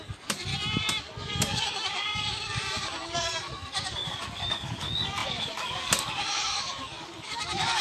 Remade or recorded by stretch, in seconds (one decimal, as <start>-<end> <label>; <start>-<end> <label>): 0.0-0.5 remade; 0.5-1.0 recorded; 1.0-7.8 remade